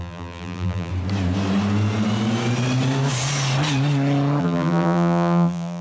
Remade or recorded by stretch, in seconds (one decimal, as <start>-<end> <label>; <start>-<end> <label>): 0.0-0.9 remade; 0.9-4.4 recorded; 4.4-5.8 remade